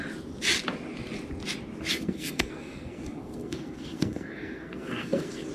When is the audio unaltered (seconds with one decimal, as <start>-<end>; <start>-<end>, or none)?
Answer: 0.0-1.9